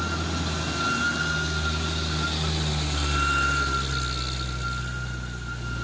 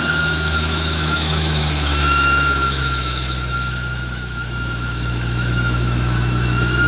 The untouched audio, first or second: first